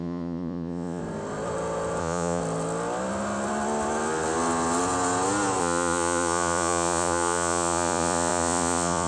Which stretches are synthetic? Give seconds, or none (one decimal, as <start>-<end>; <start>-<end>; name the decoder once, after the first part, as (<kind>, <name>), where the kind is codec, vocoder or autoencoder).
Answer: 0.0-1.0 (vocoder, Vocos); 2.0-2.4; 5.6-9.1